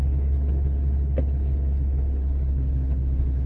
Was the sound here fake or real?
fake